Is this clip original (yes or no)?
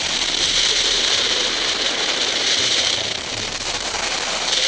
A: no